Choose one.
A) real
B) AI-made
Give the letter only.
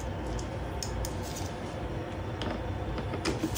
A